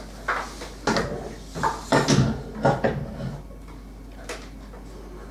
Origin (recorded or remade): recorded